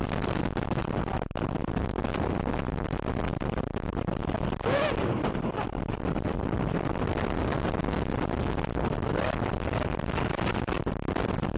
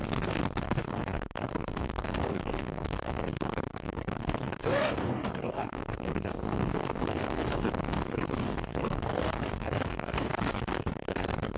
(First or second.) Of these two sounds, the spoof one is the second